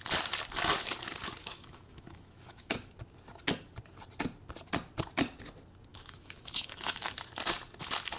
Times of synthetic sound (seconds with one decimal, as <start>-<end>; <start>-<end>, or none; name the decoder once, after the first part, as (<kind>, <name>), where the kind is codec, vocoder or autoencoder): 1.4-2.9 (autoencoder, DAC-VAE); 5.9-7.1